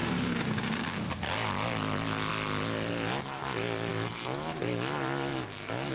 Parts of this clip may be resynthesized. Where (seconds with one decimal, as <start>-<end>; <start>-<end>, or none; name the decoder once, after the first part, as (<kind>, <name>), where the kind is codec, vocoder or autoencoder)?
0.0-1.1 (codec, DAC)

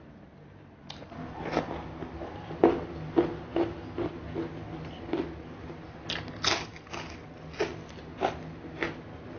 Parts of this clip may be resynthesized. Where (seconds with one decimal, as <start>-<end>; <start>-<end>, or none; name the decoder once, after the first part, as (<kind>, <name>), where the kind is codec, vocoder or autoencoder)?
none